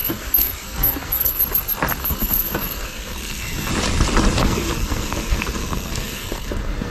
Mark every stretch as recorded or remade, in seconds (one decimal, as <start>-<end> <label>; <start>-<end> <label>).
0.0-1.4 remade; 1.4-2.0 recorded; 2.0-3.7 remade; 3.7-4.4 recorded; 4.4-6.9 remade